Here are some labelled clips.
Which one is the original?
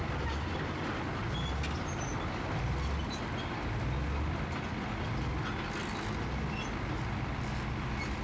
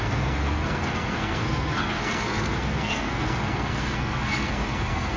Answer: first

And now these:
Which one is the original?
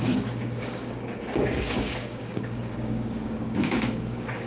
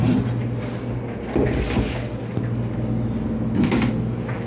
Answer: second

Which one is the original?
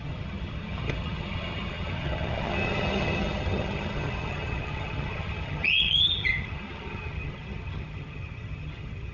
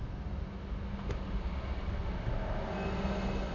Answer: second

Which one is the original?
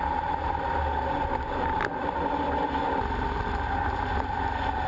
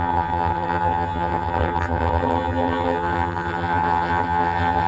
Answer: first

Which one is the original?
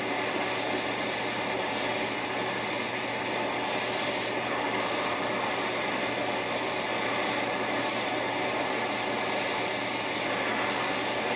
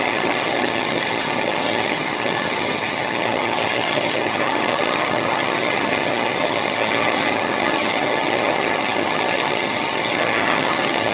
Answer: first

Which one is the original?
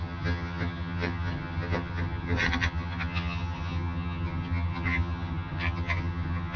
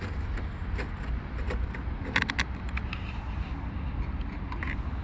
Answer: second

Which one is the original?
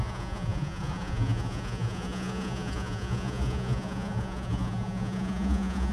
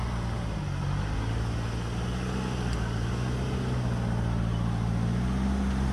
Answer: second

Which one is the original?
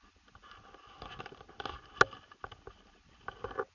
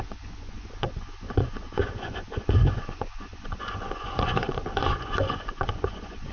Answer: first